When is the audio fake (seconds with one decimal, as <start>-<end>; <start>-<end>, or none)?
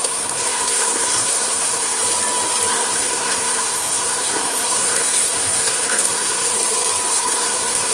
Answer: 0.0-2.0; 2.7-6.5; 7.1-7.9